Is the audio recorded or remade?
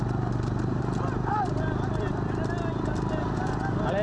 recorded